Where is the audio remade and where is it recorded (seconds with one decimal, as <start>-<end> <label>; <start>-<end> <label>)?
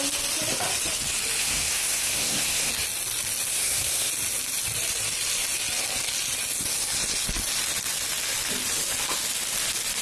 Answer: 0.0-1.4 recorded; 1.4-2.7 remade; 2.7-3.5 recorded; 3.5-4.1 remade; 4.1-10.0 recorded